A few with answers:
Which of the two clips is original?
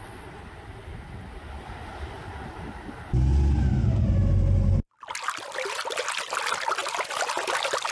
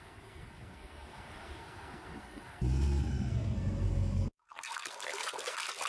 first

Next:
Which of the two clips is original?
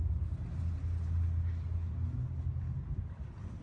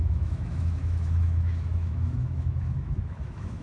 first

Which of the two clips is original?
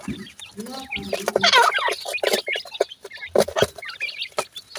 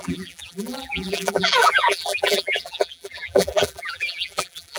first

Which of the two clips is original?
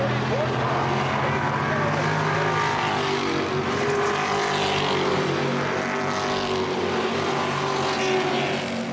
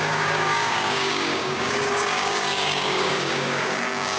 first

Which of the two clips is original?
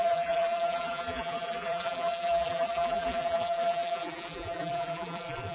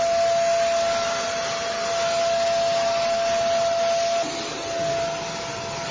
second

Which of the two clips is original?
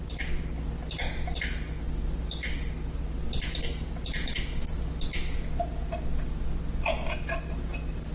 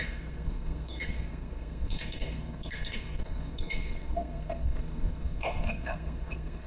first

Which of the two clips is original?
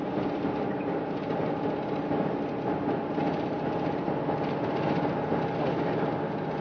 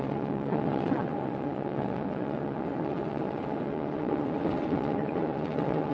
first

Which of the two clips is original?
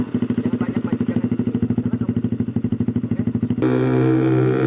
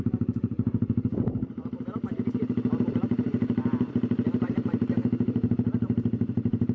first